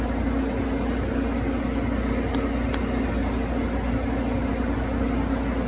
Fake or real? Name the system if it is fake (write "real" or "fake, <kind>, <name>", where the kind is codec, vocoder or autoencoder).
real